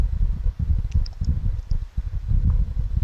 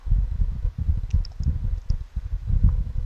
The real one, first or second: second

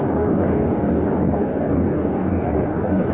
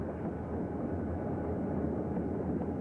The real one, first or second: second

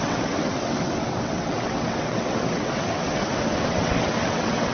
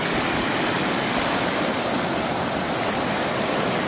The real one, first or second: second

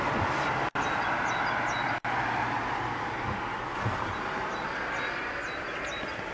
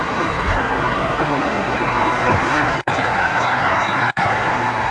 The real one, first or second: first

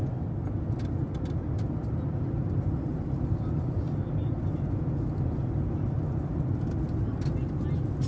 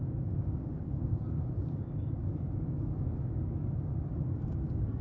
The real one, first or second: first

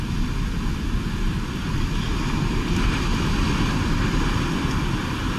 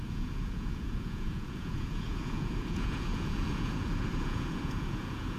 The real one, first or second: first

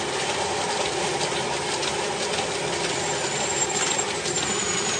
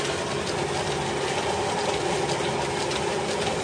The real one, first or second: second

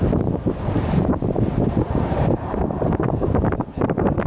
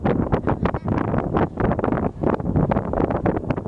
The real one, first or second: second